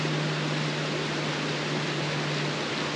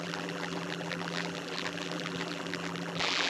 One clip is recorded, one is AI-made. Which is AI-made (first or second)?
second